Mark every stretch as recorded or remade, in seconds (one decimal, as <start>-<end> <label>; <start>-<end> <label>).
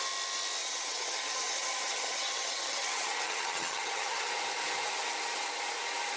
0.0-0.6 recorded; 0.6-4.3 remade; 4.3-6.2 recorded